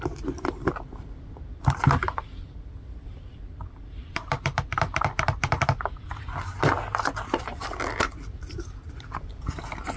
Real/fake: fake